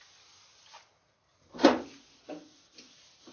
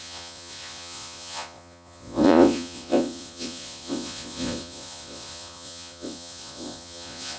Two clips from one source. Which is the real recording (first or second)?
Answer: first